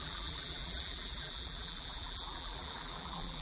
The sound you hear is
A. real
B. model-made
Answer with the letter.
B